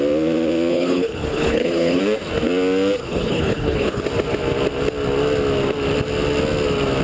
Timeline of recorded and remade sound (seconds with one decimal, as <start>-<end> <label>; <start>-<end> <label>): 0.0-0.7 recorded; 0.7-2.0 remade; 2.0-3.0 recorded; 3.0-4.0 remade; 4.0-7.0 recorded